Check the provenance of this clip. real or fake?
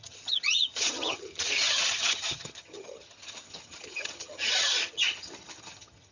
fake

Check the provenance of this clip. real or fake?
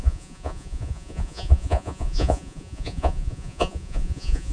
fake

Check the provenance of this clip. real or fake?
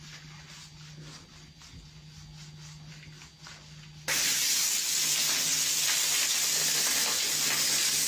real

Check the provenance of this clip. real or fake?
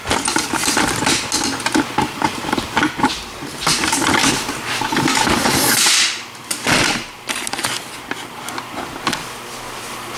real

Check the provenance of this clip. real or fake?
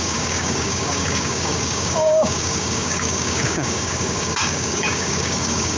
fake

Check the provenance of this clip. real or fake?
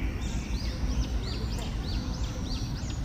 real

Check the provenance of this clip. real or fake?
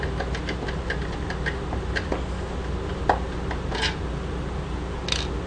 real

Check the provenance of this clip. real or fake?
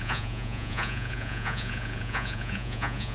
fake